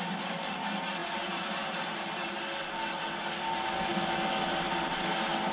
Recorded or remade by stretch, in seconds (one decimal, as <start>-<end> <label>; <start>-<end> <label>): 0.0-1.0 recorded; 1.0-2.3 remade; 2.3-5.5 recorded